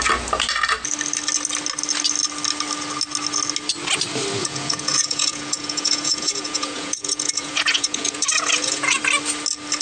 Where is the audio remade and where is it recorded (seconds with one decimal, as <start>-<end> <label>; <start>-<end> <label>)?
0.0-4.4 recorded; 4.4-9.0 remade; 9.0-9.8 recorded